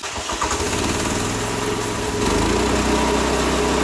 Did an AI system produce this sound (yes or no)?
no